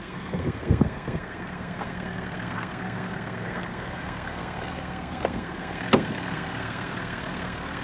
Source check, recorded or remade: remade